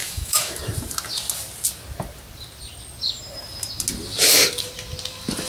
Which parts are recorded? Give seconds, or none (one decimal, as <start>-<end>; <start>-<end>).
0.6-5.5